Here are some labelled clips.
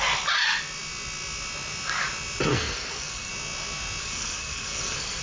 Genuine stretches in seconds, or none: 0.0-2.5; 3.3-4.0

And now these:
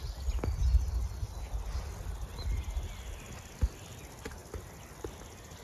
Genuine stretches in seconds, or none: 0.0-5.6

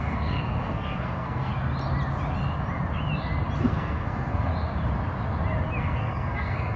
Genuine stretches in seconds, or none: 1.5-3.6; 4.5-5.8